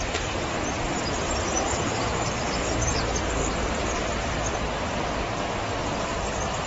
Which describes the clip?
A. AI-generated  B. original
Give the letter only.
A